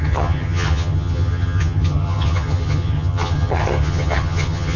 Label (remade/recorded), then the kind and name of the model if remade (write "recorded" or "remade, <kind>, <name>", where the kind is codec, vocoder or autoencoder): remade, vocoder, HiFi-GAN